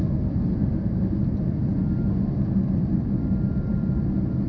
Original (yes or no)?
yes